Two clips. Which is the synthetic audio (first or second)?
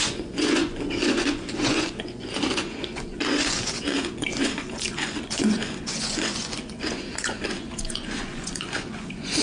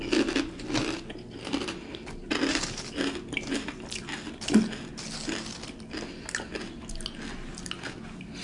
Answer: first